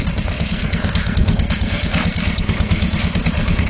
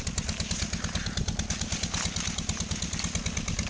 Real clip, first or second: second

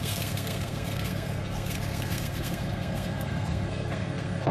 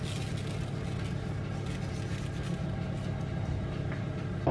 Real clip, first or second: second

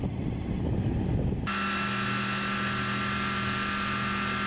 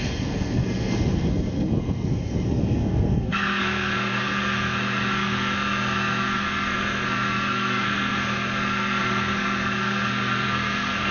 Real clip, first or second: first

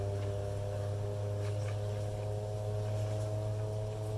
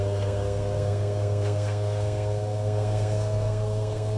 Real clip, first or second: first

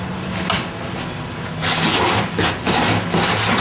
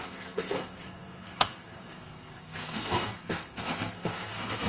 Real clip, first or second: first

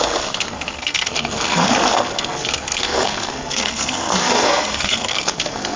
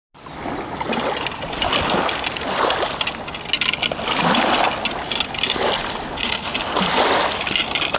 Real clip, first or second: second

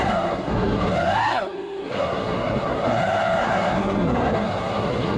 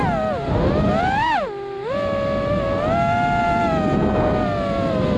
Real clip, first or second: second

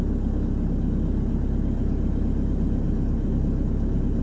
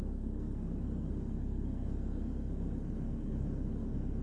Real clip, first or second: first